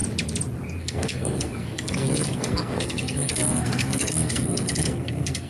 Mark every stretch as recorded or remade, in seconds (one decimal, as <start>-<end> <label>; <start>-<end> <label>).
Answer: 0.0-0.8 recorded; 0.8-5.5 remade